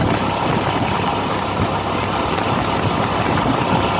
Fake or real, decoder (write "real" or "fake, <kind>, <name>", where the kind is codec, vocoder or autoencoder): real